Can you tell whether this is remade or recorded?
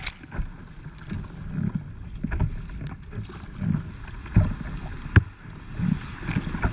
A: recorded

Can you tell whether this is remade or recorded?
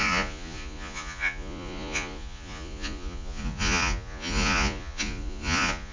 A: remade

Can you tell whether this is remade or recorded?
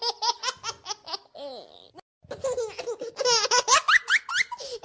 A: recorded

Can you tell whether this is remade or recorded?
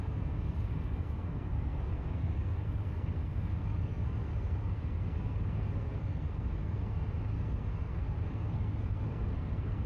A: remade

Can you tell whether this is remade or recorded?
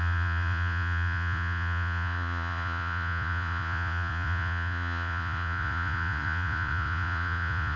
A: remade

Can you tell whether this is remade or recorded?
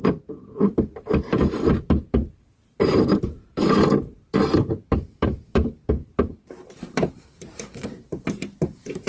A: remade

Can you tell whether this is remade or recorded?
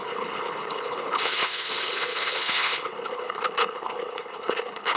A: remade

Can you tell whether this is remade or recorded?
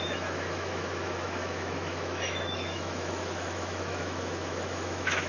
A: remade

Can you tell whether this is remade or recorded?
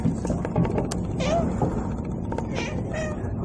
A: recorded